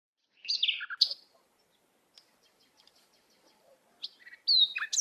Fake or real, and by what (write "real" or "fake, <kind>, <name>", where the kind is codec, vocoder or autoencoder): real